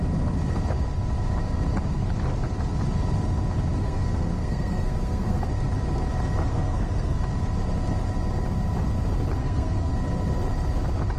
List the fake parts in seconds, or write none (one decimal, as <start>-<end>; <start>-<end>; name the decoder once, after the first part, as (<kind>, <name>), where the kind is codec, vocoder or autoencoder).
3.8-5.5 (codec, SNAC); 6.5-7.2; 9.4-9.9